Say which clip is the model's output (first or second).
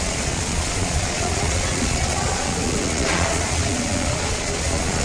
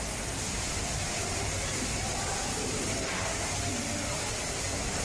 first